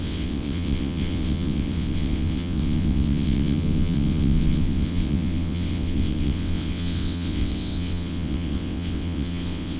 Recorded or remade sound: remade